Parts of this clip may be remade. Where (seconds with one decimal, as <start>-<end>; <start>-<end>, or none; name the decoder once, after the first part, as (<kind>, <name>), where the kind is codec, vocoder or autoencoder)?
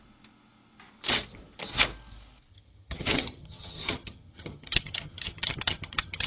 2.5-6.3 (vocoder, HiFi-GAN)